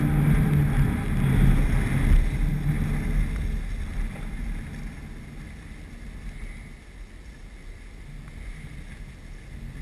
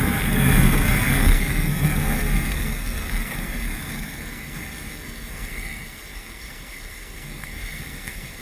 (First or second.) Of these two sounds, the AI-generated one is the second